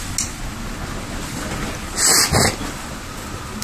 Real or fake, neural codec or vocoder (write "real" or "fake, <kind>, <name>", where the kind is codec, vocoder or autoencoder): real